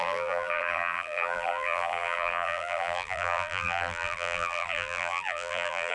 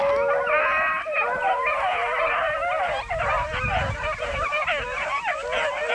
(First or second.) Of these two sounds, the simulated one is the first